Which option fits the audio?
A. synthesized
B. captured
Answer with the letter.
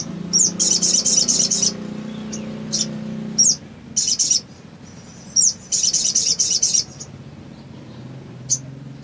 B